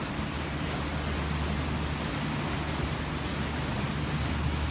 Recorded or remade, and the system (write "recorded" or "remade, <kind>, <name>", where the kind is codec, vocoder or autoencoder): recorded